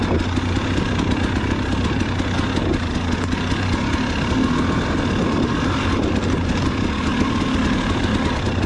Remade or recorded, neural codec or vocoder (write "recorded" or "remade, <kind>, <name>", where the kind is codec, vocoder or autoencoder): recorded